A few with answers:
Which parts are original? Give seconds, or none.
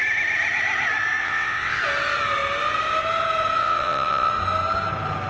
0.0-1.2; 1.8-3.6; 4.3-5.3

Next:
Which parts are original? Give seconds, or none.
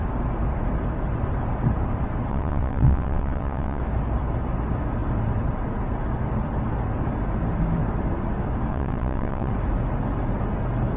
0.0-2.3; 3.8-8.7; 9.5-11.0